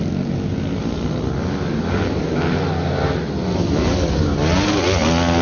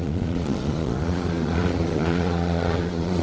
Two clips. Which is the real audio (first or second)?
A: first